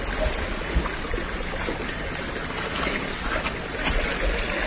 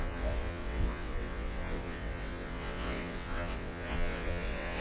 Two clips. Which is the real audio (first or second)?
first